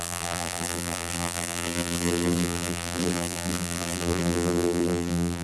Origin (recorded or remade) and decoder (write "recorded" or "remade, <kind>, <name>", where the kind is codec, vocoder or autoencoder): remade, vocoder, BigVGAN v2